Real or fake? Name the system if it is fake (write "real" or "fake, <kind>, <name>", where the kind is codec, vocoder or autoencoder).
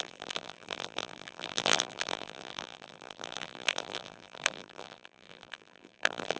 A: fake, vocoder, BigVGAN v2